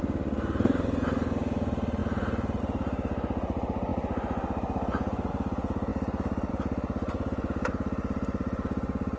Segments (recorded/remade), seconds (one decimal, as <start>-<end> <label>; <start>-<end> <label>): 0.0-9.2 recorded

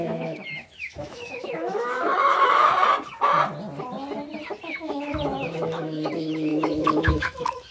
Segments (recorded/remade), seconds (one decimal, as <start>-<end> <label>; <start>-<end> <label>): 0.0-2.7 remade; 2.7-4.7 recorded; 4.7-7.7 remade